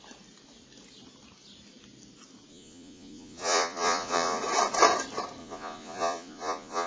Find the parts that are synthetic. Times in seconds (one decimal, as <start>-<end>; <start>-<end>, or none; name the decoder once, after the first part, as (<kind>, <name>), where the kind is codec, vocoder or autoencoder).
2.5-4.4 (vocoder, Vocos); 5.4-6.9